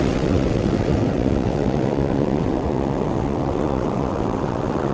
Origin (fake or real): fake